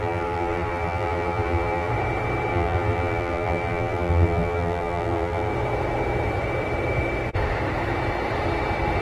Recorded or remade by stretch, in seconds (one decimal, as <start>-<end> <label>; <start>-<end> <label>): 0.0-1.9 remade; 1.9-2.5 recorded; 2.5-5.5 remade; 5.5-9.0 recorded